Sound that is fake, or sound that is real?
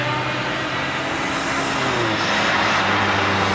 real